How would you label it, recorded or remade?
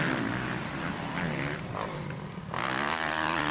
remade